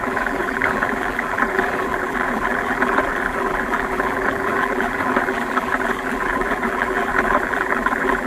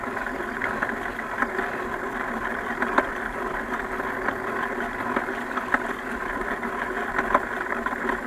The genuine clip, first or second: second